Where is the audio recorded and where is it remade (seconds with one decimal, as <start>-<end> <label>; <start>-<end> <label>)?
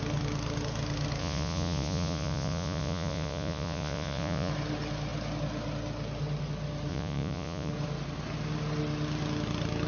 0.0-1.2 recorded; 1.2-4.5 remade; 4.5-6.9 recorded; 6.9-7.7 remade; 7.7-9.9 recorded